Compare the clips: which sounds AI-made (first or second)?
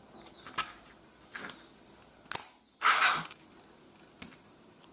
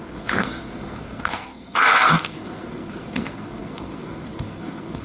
second